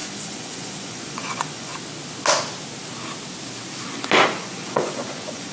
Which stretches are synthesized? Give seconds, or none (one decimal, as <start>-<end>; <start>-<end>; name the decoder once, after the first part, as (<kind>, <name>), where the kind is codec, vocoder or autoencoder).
0.0-1.7 (vocoder, Vocos); 4.4-5.5